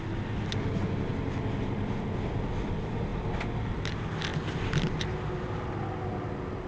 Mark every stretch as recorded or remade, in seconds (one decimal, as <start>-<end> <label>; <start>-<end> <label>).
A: 0.0-6.7 recorded